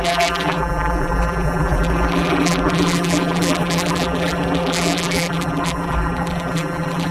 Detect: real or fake fake